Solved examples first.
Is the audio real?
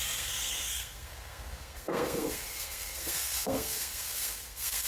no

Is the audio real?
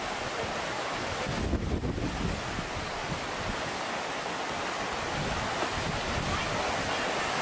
yes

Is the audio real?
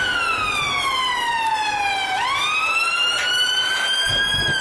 yes